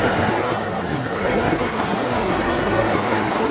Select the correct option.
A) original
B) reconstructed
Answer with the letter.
B